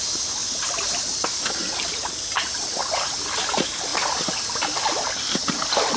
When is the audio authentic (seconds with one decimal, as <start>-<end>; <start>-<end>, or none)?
0.0-6.0